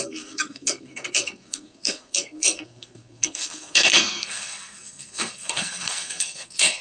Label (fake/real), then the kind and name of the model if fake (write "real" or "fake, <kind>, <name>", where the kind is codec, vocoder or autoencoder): fake, codec, SNAC